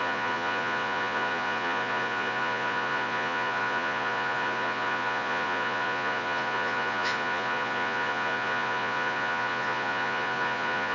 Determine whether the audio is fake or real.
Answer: fake